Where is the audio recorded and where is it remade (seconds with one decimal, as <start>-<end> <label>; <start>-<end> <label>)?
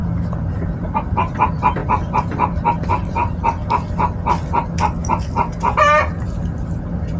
0.0-0.5 recorded; 0.5-3.2 remade; 3.2-6.2 recorded; 6.2-7.2 remade